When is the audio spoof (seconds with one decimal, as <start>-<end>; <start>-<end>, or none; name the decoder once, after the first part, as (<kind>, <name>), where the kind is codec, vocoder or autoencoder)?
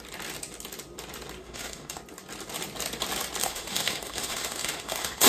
1.4-2.0 (autoencoder, DAC-VAE); 3.4-5.3